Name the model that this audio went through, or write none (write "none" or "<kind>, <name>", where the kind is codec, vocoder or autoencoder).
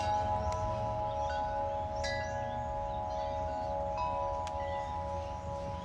none